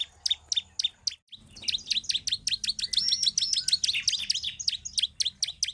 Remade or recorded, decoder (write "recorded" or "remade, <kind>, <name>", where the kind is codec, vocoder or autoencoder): recorded